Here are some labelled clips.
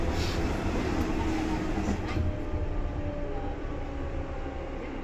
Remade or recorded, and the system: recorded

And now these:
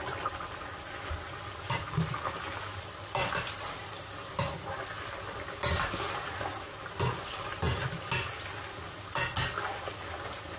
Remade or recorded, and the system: recorded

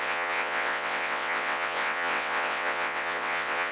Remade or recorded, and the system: remade, vocoder, WaveNeXt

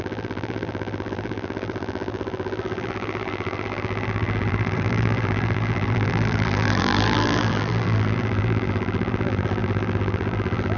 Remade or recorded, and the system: remade, vocoder, BigVGAN v2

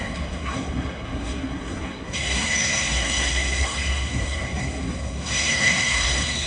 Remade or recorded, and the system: remade, codec, SNAC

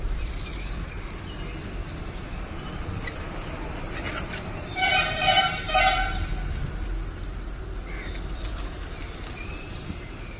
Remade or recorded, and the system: remade, vocoder, BigVGAN v2